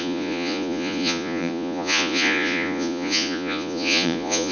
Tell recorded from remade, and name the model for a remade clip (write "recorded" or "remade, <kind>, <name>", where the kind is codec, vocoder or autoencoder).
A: remade, vocoder, Vocos